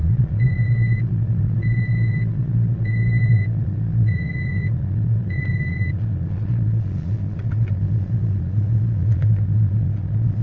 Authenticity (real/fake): fake